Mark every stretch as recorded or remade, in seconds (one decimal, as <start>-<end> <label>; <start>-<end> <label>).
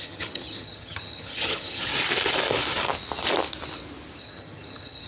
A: 0.0-1.9 remade; 1.9-4.2 recorded; 4.2-5.1 remade